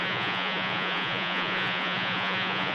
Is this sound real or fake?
fake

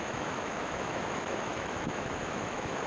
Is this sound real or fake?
fake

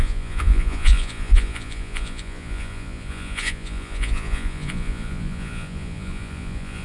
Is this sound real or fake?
fake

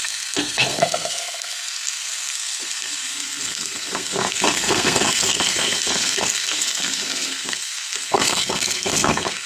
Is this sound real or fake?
fake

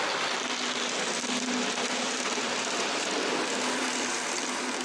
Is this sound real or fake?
real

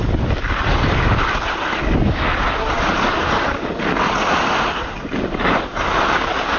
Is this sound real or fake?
real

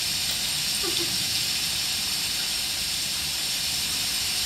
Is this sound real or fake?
real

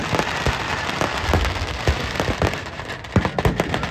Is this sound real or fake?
real